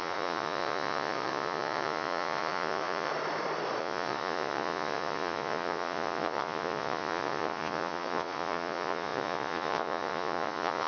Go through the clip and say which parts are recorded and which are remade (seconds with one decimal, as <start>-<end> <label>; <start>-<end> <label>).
0.0-3.1 remade; 3.1-3.8 recorded; 3.8-10.9 remade